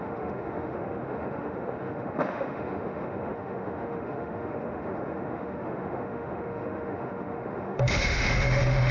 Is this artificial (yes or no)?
yes